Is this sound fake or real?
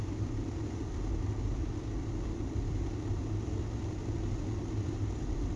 fake